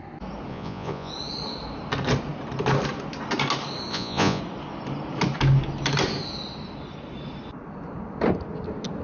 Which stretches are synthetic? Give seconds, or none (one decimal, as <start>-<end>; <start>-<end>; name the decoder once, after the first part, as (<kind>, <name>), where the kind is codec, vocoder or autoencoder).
0.5-1.1 (vocoder, Vocos); 3.9-4.4